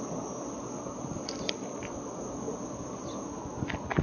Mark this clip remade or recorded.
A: recorded